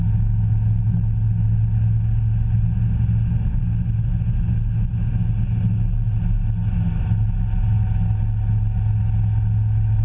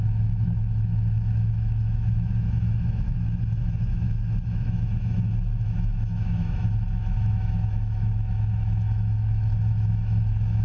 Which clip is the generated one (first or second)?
second